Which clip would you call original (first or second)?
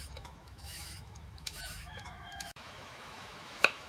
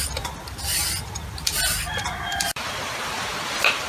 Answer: second